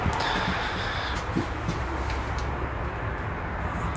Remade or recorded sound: recorded